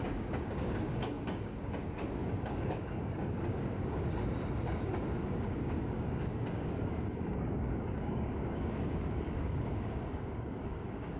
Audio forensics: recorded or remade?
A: remade